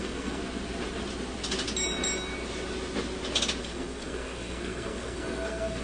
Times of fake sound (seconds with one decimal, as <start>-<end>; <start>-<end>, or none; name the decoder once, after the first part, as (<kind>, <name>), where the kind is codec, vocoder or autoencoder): 0.0-0.4 (codec, SNAC); 3.6-5.8